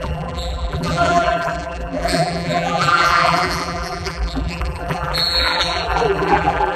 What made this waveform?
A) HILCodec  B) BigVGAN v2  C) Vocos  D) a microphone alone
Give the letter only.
B